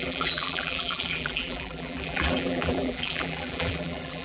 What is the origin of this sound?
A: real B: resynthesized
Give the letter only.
B